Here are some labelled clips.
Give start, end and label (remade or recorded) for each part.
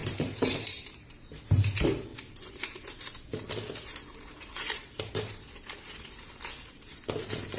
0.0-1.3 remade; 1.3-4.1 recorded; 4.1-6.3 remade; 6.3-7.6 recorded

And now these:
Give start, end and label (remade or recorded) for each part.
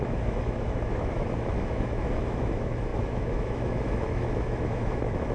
0.0-5.3 remade